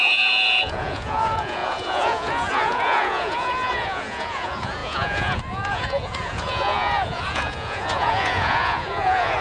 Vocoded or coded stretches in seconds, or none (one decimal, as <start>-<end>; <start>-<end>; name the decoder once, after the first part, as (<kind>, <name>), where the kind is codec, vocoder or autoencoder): 0.0-9.4 (vocoder, Vocos)